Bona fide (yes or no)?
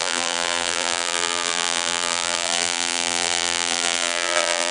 no